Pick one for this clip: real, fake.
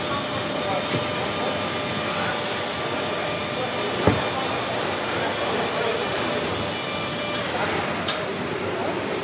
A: real